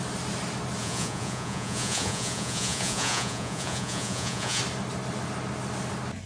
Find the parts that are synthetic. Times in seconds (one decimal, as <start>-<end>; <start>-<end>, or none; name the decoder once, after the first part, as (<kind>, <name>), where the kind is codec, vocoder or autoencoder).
0.8-4.6 (vocoder, Vocos)